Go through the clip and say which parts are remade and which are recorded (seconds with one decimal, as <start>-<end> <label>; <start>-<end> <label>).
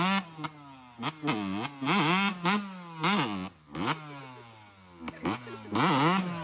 0.0-6.4 recorded